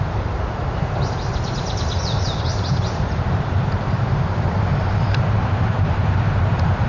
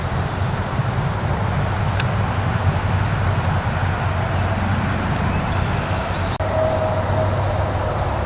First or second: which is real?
second